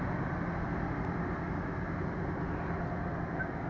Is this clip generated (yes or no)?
no